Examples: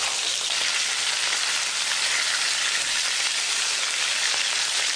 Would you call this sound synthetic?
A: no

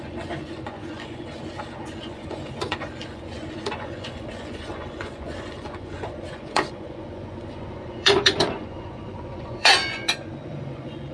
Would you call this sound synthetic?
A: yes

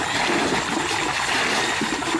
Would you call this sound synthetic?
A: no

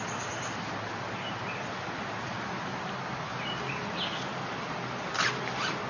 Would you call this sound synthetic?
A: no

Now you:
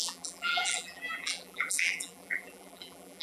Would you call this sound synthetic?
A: yes